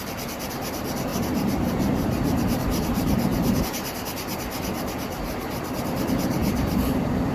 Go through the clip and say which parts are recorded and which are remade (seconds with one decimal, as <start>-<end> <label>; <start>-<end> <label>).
0.0-1.1 recorded; 1.1-3.6 remade; 3.6-7.3 recorded